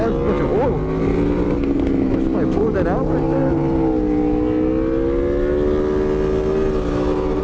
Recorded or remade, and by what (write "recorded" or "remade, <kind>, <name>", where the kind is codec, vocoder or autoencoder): recorded